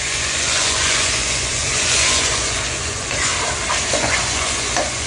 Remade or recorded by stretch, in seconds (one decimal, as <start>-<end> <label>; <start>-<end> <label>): 0.0-3.3 remade; 3.3-3.9 recorded; 3.9-5.1 remade

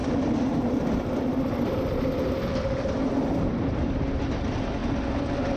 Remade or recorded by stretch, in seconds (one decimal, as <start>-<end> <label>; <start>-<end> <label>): 0.0-5.6 recorded

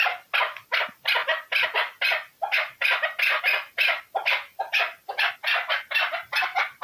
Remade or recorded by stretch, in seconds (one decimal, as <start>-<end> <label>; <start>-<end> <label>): 0.0-6.8 recorded

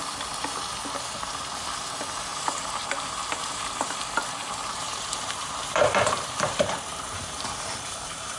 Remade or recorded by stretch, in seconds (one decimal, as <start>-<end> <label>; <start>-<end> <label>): 0.0-2.3 recorded; 2.3-4.0 remade; 4.0-4.4 recorded; 4.4-8.4 remade

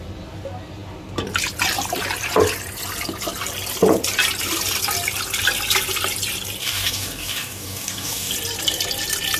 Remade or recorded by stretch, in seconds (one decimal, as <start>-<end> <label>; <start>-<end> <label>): 0.0-6.6 recorded; 6.6-8.3 remade; 8.3-9.4 recorded